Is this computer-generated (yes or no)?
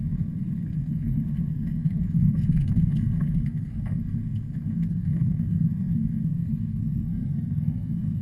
yes